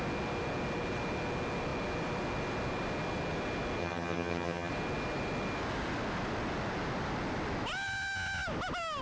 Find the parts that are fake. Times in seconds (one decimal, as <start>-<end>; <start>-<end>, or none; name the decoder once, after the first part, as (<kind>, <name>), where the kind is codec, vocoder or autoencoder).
3.8-4.7 (vocoder, HiFi-GAN)